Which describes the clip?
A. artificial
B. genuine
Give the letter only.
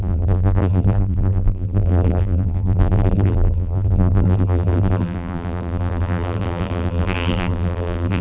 A